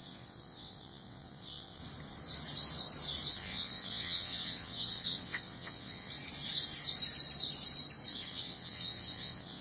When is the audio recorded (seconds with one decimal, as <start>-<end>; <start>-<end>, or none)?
1.8-3.3; 6.1-8.1